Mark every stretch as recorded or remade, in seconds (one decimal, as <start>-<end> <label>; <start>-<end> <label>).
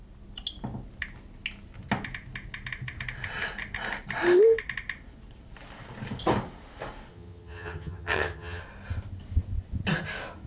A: 0.0-7.1 recorded; 7.1-8.6 remade; 8.6-10.5 recorded